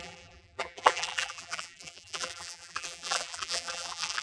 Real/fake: fake